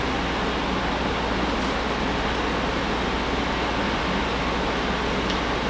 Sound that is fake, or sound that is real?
real